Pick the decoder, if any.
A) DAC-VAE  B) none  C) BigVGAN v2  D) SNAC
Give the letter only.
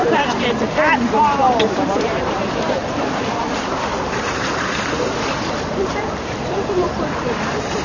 C